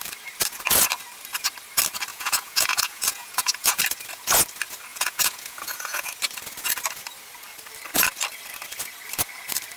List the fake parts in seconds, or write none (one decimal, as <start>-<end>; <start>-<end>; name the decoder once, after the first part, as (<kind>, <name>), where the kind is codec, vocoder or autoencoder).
2.1-3.8 (vocoder, Vocos); 4.9-6.1